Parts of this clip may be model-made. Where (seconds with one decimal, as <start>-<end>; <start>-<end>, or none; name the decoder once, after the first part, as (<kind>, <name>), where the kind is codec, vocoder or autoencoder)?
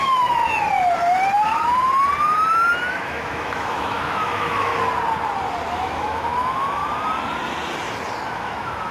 0.0-0.4 (autoencoder, DAC-VAE); 2.9-4.7; 5.7-6.8; 8.3-8.9